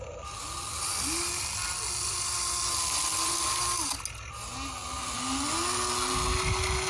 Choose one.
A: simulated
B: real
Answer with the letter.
B